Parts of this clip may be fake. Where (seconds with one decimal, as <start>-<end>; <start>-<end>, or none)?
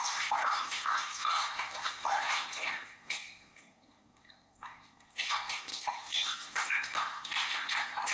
0.0-8.1